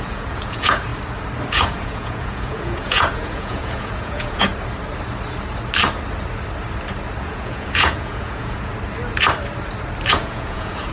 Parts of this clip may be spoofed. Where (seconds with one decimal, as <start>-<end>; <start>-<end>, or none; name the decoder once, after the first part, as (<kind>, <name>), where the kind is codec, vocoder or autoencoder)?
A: 0.0-0.9 (vocoder, Vocos); 1.5-4.5; 7.2-8.7; 10.1-10.9